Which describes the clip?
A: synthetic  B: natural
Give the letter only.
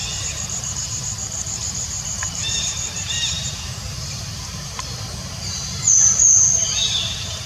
A